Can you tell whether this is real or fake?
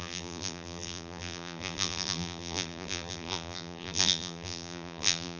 fake